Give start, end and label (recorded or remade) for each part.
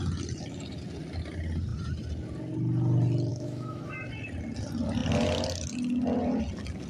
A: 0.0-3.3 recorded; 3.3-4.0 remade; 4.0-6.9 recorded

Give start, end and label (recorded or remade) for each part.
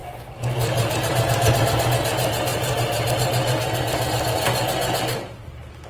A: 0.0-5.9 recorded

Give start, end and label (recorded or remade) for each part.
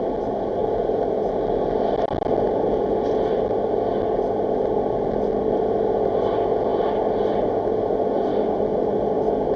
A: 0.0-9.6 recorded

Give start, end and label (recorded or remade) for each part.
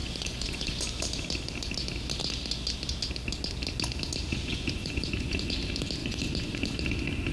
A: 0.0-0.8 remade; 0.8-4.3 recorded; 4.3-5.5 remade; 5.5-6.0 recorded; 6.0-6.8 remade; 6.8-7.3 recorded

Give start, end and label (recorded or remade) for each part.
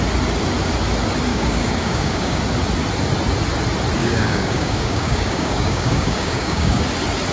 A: 0.0-1.3 recorded; 1.3-2.4 remade; 2.4-4.0 recorded; 4.0-6.8 remade; 6.8-7.3 recorded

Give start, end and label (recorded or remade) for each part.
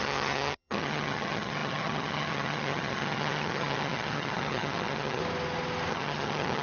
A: 0.0-5.2 remade; 5.2-5.9 recorded; 5.9-6.6 remade